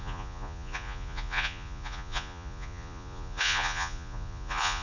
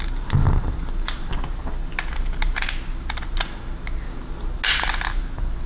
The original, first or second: second